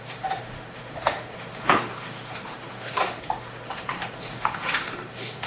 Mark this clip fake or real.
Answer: fake